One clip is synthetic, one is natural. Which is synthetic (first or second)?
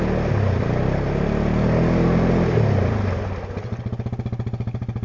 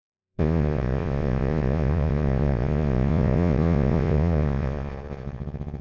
second